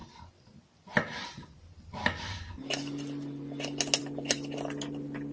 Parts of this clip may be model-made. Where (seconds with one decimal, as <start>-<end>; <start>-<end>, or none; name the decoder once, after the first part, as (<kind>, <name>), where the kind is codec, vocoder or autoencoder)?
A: none